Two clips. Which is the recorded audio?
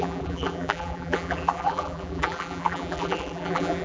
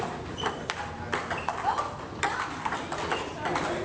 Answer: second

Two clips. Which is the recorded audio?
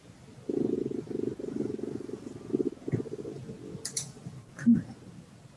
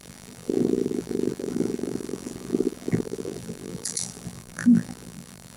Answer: first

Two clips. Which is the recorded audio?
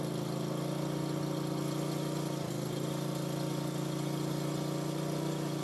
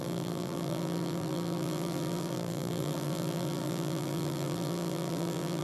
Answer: first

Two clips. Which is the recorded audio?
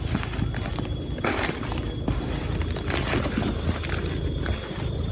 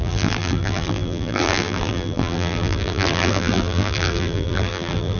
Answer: first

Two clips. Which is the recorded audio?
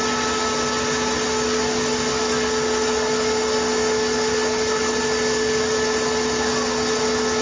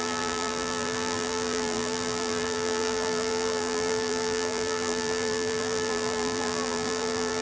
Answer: first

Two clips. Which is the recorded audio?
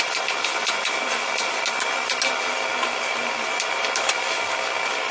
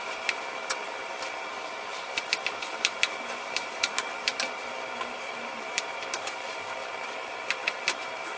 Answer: first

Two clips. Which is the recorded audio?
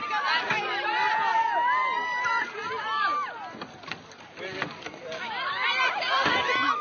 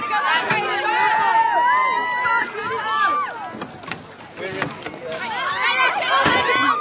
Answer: second